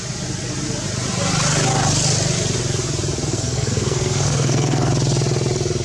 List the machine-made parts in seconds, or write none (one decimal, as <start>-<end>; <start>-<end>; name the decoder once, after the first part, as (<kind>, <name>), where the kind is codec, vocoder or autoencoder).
3.3-4.9 (codec, SNAC)